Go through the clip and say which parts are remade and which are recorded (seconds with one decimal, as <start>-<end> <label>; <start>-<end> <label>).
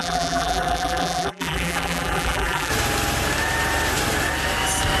0.0-2.7 remade; 2.7-5.0 recorded